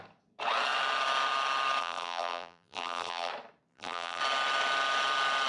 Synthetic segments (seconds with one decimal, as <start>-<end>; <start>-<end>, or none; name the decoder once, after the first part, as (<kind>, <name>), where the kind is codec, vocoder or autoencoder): 1.8-3.3 (vocoder, BigVGAN v2); 3.7-4.2

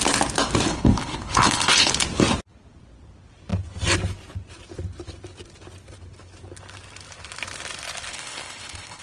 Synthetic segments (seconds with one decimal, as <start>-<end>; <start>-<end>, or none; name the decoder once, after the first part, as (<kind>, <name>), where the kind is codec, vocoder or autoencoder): 0.7-1.9 (codec, HILCodec); 8.1-9.0

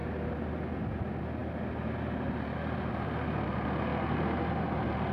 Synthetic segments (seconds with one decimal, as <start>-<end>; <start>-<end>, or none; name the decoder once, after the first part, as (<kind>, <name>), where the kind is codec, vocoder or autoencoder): none

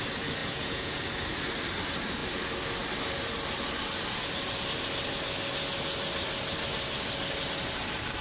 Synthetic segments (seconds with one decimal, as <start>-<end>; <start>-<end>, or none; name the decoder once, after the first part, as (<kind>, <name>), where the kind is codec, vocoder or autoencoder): 0.4-1.0 (vocoder, Vocos)